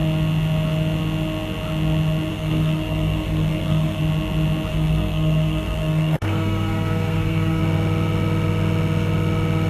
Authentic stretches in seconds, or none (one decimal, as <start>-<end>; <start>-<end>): 0.0-2.3; 4.0-4.7; 7.6-9.7